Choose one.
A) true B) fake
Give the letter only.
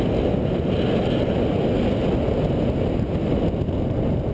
A